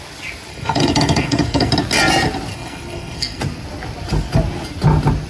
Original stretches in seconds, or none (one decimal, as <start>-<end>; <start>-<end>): 0.0-0.5; 1.7-2.5; 3.4-5.3